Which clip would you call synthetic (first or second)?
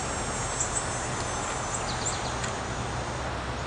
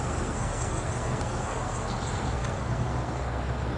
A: second